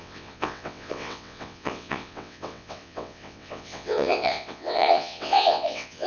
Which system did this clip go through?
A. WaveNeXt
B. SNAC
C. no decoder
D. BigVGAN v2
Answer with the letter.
A